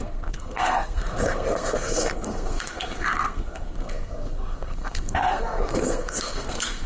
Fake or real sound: fake